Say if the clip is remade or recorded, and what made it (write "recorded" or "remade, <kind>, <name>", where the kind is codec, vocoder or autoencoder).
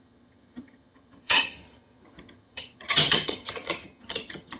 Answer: remade, vocoder, HiFi-GAN